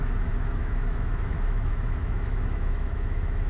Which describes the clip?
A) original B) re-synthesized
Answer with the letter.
B